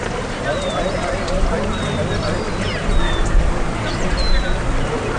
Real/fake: fake